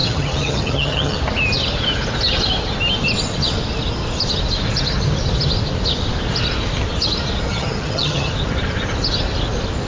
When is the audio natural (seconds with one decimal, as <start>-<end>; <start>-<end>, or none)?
1.2-7.5; 8.3-9.9